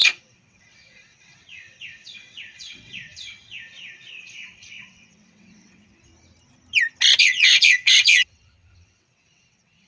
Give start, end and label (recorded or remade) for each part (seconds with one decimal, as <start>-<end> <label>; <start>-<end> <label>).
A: 0.0-6.1 remade; 6.1-7.2 recorded; 7.2-9.9 remade